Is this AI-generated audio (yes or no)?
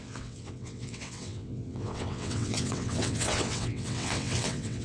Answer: yes